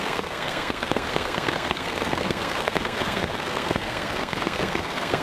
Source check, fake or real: fake